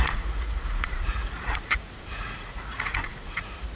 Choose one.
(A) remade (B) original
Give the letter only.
A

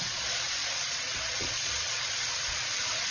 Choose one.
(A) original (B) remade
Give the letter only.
B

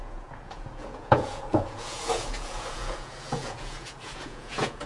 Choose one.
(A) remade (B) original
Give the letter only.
A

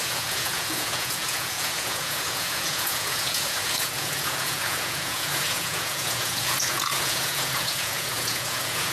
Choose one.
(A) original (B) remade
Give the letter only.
B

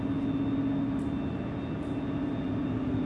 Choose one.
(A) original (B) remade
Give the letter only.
A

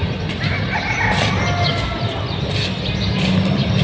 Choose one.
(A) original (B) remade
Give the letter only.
A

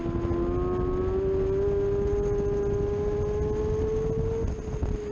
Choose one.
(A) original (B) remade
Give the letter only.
A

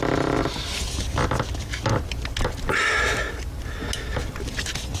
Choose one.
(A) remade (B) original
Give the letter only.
B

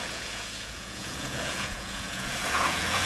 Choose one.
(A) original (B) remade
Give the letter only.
B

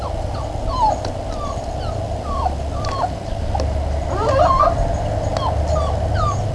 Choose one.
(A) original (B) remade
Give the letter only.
A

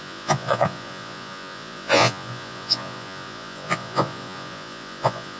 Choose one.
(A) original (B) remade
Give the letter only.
B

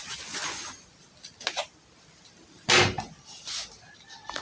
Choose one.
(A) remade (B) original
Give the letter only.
B